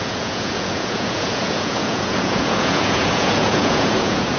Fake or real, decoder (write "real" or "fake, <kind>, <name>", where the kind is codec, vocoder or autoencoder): fake, vocoder, Vocos